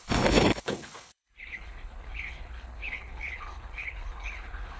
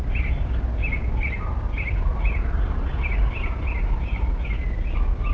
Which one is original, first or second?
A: second